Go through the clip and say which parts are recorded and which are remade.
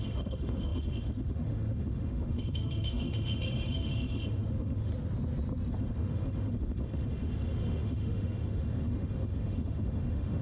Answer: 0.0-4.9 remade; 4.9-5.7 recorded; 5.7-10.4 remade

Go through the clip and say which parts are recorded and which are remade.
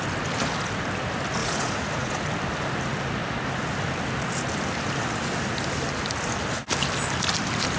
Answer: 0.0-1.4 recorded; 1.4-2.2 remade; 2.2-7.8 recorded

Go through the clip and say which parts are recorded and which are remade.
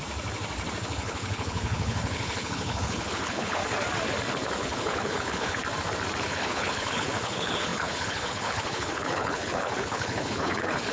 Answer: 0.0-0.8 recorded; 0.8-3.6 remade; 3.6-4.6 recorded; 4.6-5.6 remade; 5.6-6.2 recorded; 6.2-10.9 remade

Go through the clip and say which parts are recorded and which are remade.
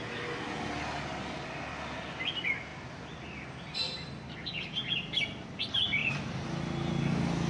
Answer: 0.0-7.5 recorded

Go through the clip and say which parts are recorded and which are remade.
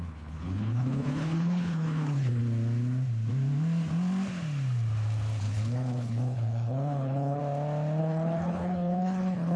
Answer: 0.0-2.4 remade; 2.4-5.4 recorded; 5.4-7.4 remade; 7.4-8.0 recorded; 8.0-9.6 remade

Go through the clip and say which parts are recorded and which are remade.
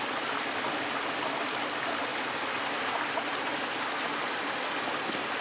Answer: 0.0-5.4 recorded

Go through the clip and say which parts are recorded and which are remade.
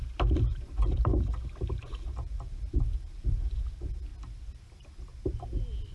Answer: 0.0-4.1 remade; 4.1-5.9 recorded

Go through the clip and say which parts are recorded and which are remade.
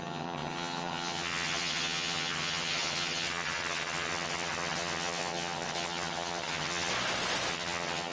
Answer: 0.0-6.9 remade; 6.9-7.5 recorded; 7.5-8.1 remade